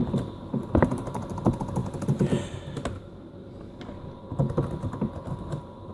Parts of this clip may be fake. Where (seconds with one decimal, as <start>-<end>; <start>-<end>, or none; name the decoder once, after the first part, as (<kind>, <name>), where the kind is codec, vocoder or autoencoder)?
0.0-1.8 (vocoder, BigVGAN v2); 5.3-5.9